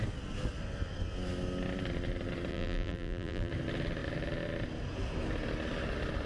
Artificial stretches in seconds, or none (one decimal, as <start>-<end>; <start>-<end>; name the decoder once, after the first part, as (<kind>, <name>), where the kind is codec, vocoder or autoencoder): 2.5-3.5 (vocoder, BigVGAN v2)